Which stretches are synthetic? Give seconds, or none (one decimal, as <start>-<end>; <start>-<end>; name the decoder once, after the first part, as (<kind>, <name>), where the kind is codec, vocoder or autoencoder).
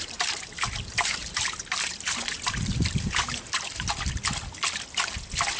1.2-3.9 (vocoder, BigVGAN v2)